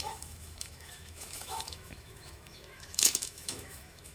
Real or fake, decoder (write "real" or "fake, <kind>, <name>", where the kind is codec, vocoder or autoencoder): fake, autoencoder, DAC-VAE